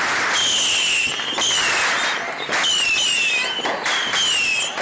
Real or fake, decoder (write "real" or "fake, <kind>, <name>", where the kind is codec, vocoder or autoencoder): real